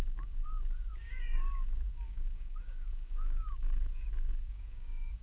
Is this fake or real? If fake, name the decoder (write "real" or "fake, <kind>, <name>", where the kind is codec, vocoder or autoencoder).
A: fake, codec, DAC